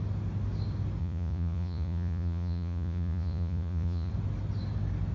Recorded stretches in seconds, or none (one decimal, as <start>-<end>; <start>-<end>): 0.0-1.0; 4.1-5.1